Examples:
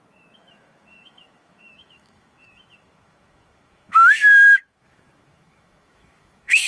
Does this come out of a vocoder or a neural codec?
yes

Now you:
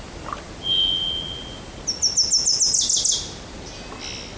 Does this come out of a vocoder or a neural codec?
no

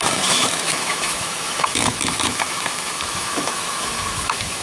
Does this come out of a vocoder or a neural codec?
yes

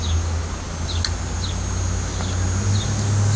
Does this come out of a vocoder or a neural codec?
no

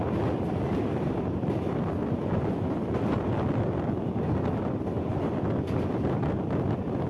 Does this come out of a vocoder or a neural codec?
no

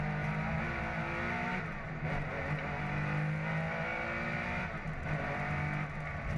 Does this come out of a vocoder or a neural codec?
no